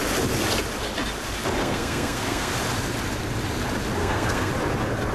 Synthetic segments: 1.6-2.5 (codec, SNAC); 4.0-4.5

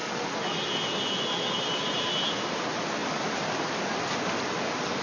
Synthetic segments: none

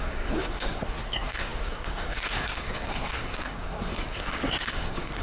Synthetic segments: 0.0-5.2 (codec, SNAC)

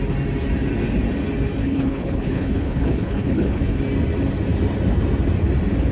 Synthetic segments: 1.6-3.8 (codec, HILCodec)